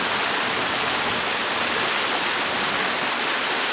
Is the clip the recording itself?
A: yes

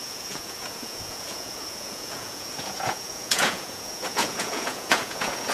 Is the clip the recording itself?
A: no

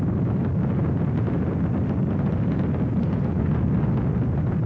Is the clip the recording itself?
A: yes